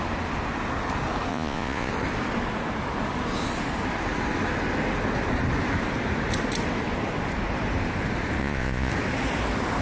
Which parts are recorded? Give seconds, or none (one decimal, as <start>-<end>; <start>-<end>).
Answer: 0.0-1.3; 1.9-8.4; 8.9-9.8